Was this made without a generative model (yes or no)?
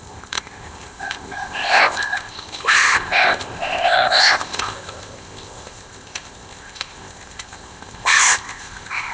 no